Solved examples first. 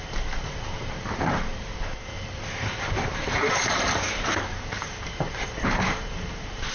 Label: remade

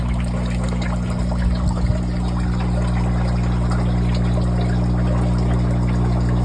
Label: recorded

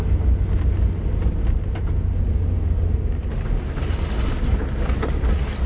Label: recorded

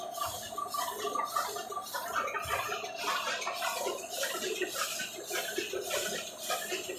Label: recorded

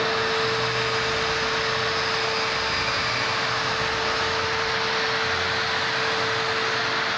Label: recorded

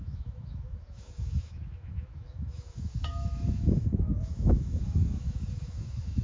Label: remade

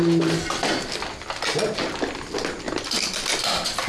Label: recorded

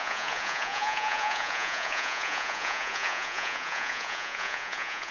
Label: remade